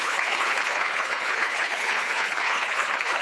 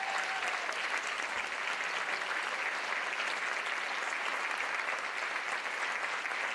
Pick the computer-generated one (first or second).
first